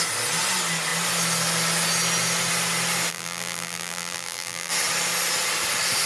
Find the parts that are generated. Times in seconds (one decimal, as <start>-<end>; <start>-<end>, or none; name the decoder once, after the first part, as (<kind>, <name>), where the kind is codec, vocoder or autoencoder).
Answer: 3.1-4.7 (vocoder, BigVGAN v2)